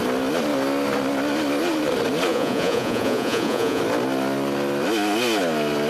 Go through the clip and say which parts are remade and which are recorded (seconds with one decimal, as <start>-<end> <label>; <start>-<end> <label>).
0.0-2.3 recorded; 2.3-3.8 remade; 3.8-5.9 recorded